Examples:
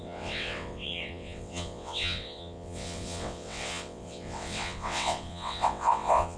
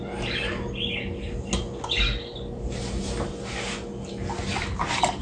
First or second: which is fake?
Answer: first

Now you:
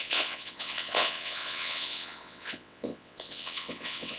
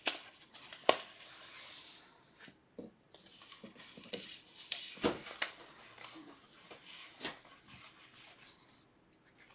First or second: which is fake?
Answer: first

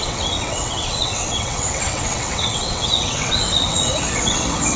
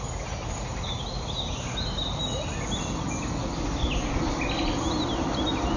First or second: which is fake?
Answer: first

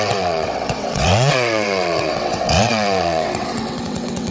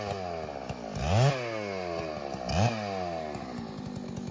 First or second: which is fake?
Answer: first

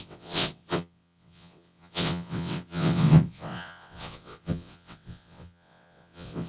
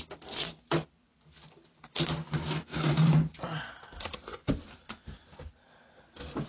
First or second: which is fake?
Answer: first